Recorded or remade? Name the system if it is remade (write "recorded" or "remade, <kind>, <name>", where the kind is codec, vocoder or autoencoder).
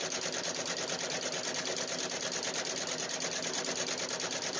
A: recorded